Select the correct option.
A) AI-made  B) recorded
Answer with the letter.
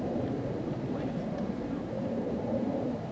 A